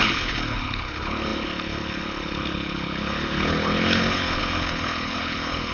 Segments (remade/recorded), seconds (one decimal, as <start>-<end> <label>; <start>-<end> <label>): 0.0-5.7 remade